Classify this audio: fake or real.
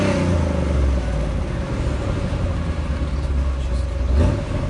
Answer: real